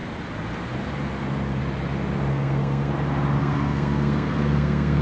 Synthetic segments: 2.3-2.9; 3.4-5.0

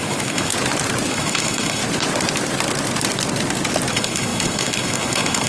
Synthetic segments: 0.0-0.5; 1.1-1.8; 3.9-5.5

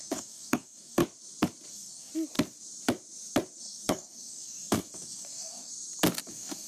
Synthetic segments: 0.0-1.0; 1.7-2.1; 3.6-5.7; 6.3-6.7

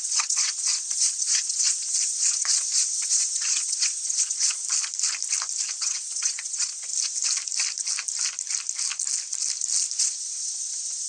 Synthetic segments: 0.0-4.6; 5.8-6.9; 10.0-11.1

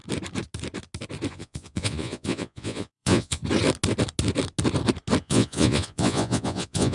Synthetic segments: 1.3-3.4; 5.2-6.9

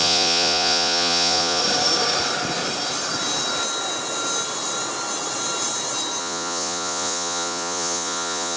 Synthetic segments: 0.0-1.6; 6.2-8.6

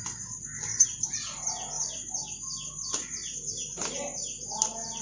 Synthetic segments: none